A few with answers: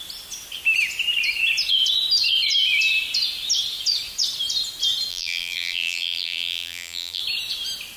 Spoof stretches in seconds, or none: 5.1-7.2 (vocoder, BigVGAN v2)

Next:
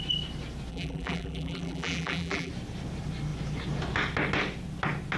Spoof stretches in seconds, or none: 0.7-2.5 (vocoder, BigVGAN v2)

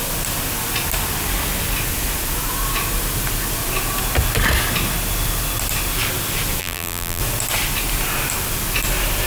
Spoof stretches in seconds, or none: 6.6-7.2 (vocoder, BigVGAN v2)

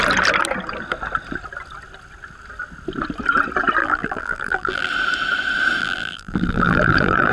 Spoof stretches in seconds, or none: 3.8-4.9 (vocoder, BigVGAN v2); 5.8-7.3

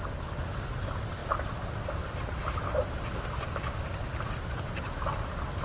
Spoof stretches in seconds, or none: none

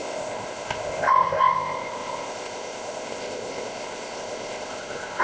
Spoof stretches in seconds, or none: 0.0-5.2 (codec, ZipCodec)

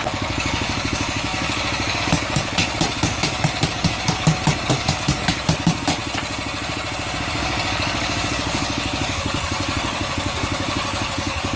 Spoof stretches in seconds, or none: 0.0-6.0 (codec, DAC); 7.2-11.6

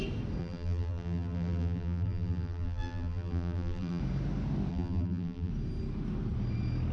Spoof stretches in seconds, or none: 0.4-4.0 (vocoder, BigVGAN v2); 4.7-5.5